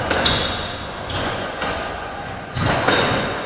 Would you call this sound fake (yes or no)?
yes